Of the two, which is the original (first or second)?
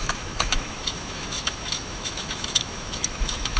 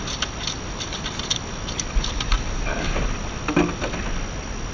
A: second